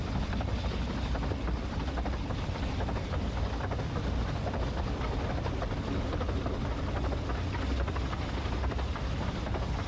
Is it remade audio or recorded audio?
recorded